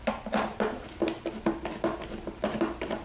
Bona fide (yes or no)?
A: yes